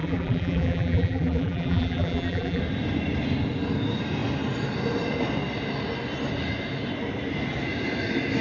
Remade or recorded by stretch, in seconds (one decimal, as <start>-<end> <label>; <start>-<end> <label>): 0.0-2.6 remade; 2.6-8.4 recorded